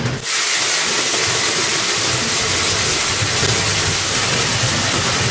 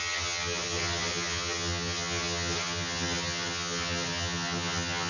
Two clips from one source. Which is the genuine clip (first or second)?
first